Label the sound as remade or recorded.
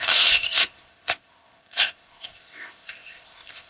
remade